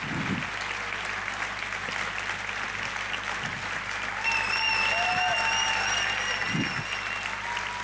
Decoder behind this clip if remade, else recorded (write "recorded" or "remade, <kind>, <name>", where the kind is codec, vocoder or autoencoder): recorded